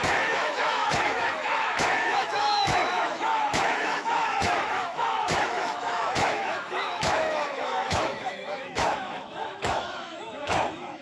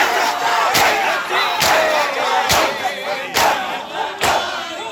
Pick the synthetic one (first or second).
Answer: first